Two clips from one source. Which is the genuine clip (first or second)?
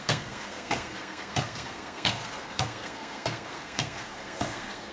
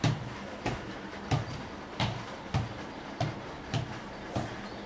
second